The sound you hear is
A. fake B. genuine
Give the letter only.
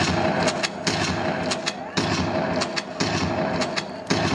B